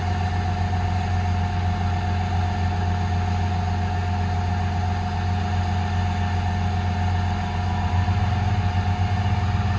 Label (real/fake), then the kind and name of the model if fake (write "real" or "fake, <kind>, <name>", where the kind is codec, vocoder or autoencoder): real